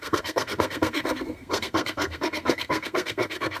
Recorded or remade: remade